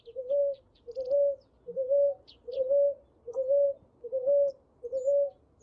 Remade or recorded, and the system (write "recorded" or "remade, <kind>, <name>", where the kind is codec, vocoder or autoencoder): recorded